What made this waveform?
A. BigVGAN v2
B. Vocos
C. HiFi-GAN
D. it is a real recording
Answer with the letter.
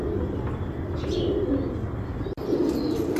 D